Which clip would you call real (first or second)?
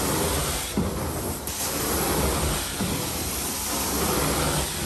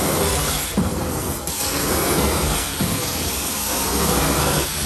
first